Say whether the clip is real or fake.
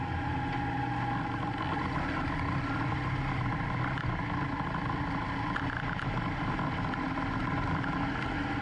real